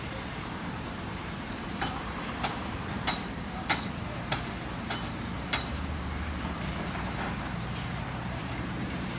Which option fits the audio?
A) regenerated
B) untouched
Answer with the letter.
A